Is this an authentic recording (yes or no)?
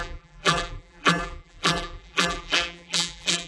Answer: no